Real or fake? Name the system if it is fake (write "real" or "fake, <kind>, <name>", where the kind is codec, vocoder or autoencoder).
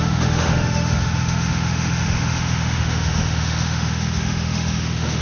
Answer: fake, autoencoder, DAC-VAE